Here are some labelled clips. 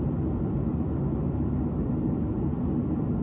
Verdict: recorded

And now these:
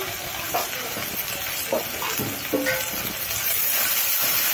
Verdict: recorded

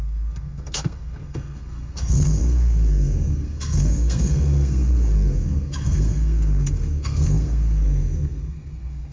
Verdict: remade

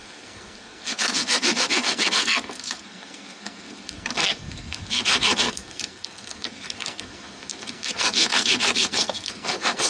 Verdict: remade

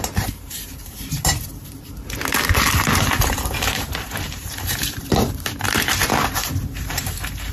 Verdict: remade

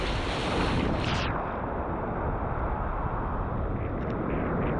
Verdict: recorded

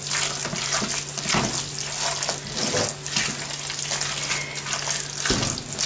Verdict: recorded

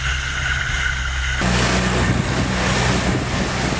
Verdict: recorded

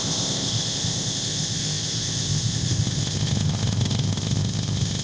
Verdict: remade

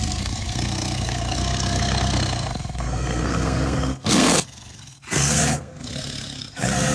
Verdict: remade